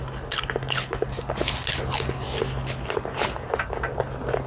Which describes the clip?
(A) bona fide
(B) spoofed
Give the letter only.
A